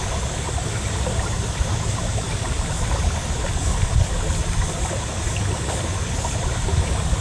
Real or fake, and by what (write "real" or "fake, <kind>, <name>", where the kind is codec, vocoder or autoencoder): real